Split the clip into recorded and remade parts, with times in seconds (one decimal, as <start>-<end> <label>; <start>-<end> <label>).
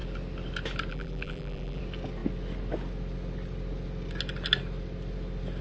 0.0-0.9 recorded; 0.9-1.8 remade; 1.8-5.6 recorded